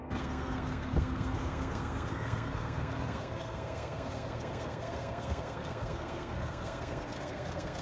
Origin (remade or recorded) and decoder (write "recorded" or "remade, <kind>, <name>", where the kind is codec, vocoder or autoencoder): remade, codec, SNAC